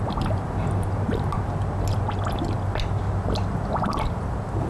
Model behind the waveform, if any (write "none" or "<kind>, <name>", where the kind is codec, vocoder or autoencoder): none